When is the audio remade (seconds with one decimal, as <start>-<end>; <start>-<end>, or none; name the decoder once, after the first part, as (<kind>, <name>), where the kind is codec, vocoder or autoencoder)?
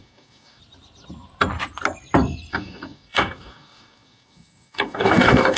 0.0-0.6 (codec, DAC); 2.5-5.6